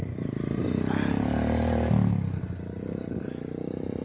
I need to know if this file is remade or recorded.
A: recorded